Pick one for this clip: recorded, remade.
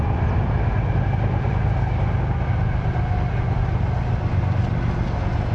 recorded